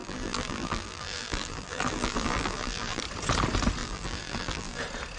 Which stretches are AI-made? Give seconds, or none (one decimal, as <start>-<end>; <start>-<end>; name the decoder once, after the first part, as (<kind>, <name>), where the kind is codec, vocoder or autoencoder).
0.0-3.0 (vocoder, BigVGAN v2); 3.8-4.8